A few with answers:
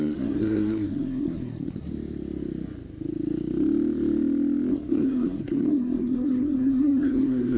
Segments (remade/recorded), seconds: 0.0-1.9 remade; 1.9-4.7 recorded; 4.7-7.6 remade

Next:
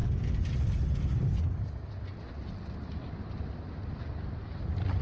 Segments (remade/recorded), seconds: 0.0-5.0 recorded

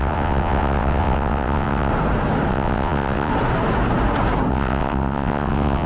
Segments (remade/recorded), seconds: 0.0-1.9 remade; 1.9-2.5 recorded; 2.5-3.3 remade; 3.3-4.5 recorded; 4.5-5.9 remade

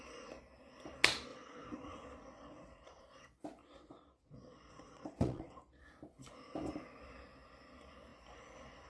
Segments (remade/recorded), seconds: 0.0-1.3 recorded; 1.3-3.0 remade; 3.0-3.6 recorded; 3.6-5.8 remade; 5.8-8.9 recorded

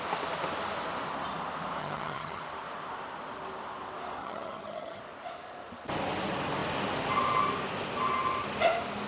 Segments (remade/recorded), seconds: 0.0-1.8 recorded; 1.8-2.4 remade; 2.4-4.2 recorded; 4.2-5.0 remade; 5.0-9.1 recorded

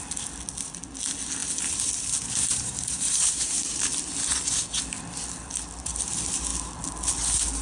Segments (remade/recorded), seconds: 0.0-2.5 recorded; 2.5-3.8 remade; 3.8-7.6 recorded

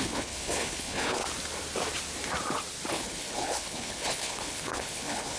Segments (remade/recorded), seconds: 0.0-1.2 remade; 1.2-2.9 recorded; 2.9-5.4 remade

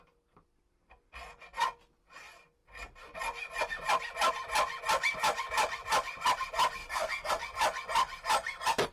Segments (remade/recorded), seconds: 0.0-6.8 recorded; 6.8-7.3 remade; 7.3-8.9 recorded